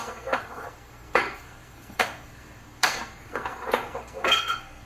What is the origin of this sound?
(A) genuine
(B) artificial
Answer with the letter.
B